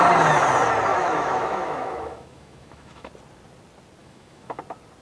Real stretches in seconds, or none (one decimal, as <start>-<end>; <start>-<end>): 0.0-0.9; 3.1-4.0; 4.6-5.0

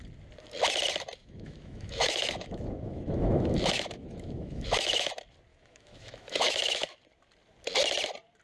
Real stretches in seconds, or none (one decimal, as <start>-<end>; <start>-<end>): 0.0-1.2; 5.1-5.5; 7.0-8.4

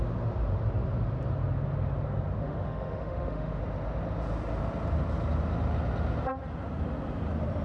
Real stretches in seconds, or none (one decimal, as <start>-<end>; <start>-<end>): 0.0-2.4; 3.6-7.6

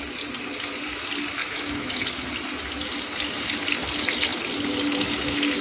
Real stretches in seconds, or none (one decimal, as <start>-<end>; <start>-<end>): 0.0-1.4; 2.0-5.6

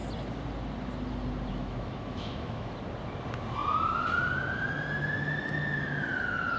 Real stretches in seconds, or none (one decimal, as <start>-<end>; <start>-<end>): 0.0-1.5; 2.7-6.6

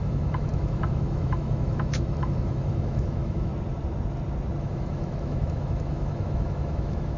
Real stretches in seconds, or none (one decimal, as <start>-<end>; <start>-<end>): 3.5-4.6

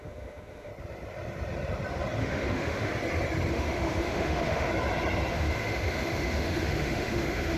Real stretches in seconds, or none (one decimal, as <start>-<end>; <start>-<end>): 0.7-2.2; 2.9-3.5; 4.7-5.3

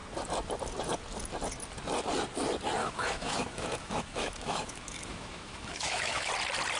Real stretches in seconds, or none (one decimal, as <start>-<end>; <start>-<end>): 0.0-2.8; 6.3-6.8